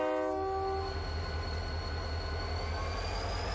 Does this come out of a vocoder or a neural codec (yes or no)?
no